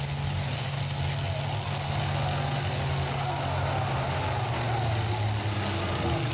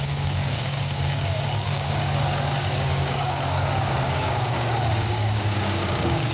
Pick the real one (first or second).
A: first